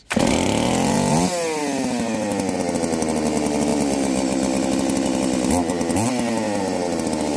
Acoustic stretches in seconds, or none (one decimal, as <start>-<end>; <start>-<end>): 0.0-7.4

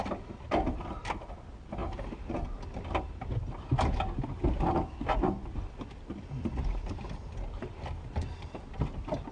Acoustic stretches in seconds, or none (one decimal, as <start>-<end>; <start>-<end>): 0.0-9.3

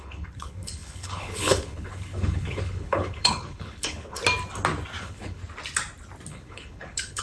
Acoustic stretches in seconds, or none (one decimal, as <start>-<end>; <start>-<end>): 4.2-5.0; 5.4-6.3

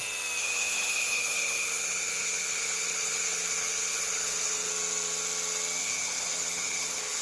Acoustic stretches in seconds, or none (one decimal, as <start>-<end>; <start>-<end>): 0.0-0.4; 4.7-5.8

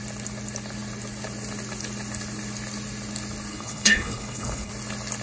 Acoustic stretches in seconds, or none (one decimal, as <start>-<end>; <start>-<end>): 0.0-3.5; 4.7-5.2

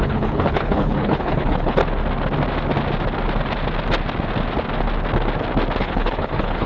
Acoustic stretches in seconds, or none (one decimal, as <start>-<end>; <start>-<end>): 1.8-5.8

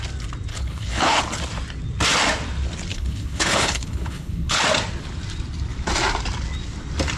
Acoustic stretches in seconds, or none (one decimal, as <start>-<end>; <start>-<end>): 0.0-0.5; 1.2-2.9; 4.6-7.2